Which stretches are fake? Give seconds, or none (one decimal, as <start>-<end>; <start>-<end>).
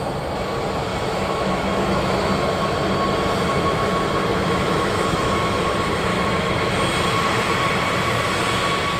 0.9-2.3; 3.9-5.6; 6.1-6.7